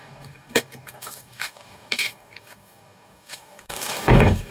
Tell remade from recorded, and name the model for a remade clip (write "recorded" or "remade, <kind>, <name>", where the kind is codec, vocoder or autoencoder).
remade, codec, DAC